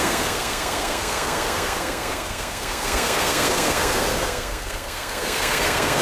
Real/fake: fake